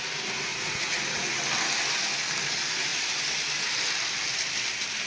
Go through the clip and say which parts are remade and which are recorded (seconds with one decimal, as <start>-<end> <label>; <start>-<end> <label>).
0.0-0.5 recorded; 0.5-1.4 remade; 1.4-5.1 recorded